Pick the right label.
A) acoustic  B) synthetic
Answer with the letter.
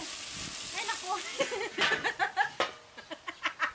A